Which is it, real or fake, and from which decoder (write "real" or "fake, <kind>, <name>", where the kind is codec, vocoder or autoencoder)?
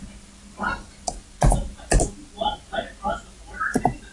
real